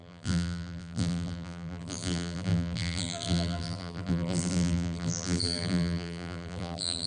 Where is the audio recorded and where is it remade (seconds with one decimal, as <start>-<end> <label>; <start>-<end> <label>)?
0.0-7.1 remade